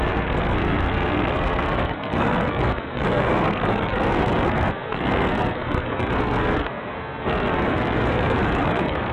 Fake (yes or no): yes